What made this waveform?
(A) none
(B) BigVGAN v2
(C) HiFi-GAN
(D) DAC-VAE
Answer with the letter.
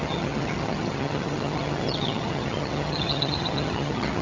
C